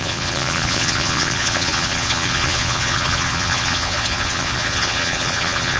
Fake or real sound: fake